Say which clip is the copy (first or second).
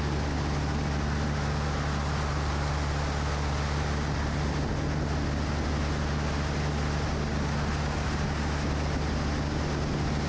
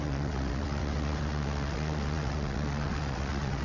second